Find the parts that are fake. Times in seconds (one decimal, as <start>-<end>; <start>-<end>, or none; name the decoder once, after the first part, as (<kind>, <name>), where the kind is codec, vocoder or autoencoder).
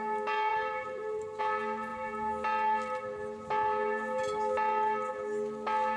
0.5-1.4 (vocoder, BigVGAN v2)